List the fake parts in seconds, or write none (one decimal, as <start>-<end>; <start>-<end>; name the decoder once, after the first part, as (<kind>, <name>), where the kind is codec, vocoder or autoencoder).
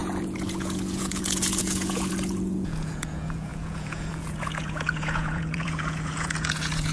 0.0-6.9 (vocoder, Vocos)